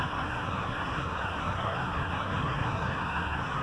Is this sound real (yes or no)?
no